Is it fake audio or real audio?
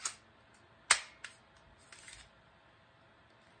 real